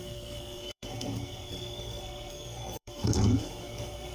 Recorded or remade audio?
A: remade